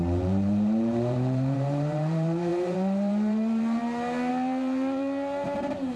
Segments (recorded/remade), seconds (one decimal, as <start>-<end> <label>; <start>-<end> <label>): 0.0-6.0 remade